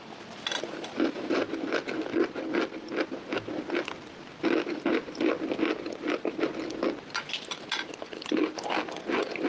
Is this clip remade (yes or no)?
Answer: no